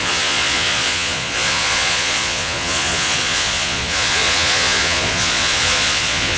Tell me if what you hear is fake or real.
fake